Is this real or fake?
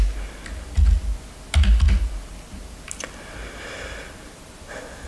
real